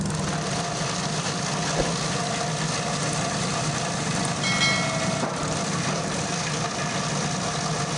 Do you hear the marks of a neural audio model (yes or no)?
no